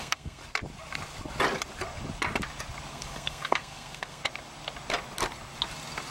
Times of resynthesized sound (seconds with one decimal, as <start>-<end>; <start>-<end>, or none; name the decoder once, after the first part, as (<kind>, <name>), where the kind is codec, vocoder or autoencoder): 0.0-0.4 (codec, SNAC); 2.9-4.2